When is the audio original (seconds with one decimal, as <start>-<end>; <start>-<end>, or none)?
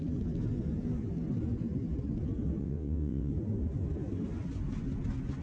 0.0-2.6; 3.3-5.4